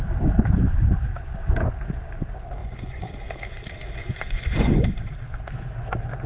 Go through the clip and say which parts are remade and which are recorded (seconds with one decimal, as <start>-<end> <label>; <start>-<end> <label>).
0.0-2.6 recorded; 2.6-3.1 remade; 3.1-4.0 recorded; 4.0-4.9 remade; 4.9-6.3 recorded